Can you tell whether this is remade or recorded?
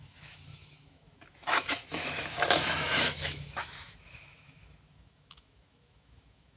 remade